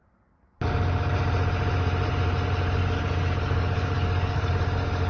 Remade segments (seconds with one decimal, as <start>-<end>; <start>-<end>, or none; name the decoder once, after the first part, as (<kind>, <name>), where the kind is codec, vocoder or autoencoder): 2.8-4.5 (codec, DAC)